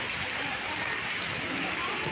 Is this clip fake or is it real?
real